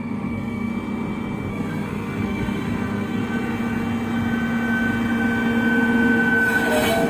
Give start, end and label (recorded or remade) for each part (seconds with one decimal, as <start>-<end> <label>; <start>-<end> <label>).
0.0-0.7 remade; 0.7-1.5 recorded; 1.5-3.2 remade; 3.2-7.1 recorded